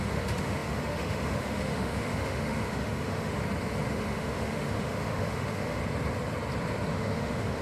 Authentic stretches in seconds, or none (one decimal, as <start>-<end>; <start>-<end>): 3.4-3.9; 5.8-6.9